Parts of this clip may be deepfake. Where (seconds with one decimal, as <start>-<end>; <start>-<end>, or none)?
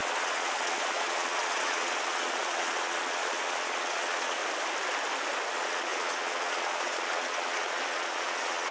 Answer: 0.0-4.4; 5.5-8.7